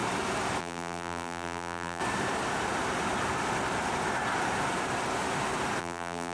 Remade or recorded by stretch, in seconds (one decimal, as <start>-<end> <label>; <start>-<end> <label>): 0.0-0.6 recorded; 0.6-2.0 remade; 2.0-5.8 recorded; 5.8-6.3 remade